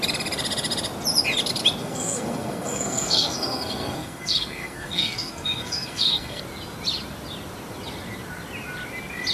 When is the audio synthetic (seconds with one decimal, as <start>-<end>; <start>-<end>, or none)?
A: 1.8-6.4